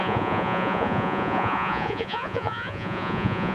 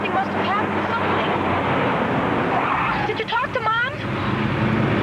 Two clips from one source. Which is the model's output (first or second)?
first